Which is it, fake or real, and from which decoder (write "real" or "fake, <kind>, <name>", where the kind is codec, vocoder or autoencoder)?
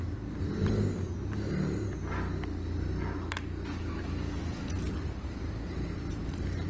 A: real